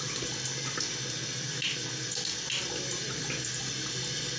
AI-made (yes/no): no